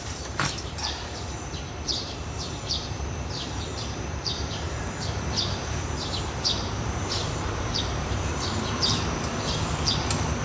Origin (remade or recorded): remade